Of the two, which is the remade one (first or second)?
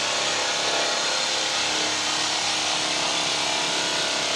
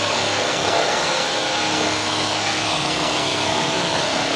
second